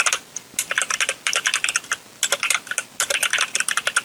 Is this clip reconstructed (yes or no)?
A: no